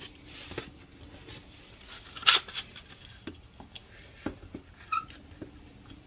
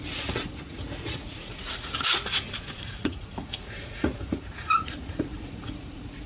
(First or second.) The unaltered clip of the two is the first